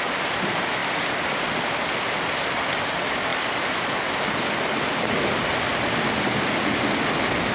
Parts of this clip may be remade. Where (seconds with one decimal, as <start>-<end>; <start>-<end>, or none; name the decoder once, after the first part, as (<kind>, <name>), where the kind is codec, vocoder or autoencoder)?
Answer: none